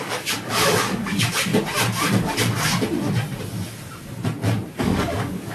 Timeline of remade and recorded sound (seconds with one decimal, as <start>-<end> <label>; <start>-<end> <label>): 0.0-1.5 remade; 1.5-4.8 recorded; 4.8-5.5 remade